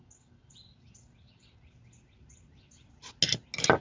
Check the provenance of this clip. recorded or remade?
recorded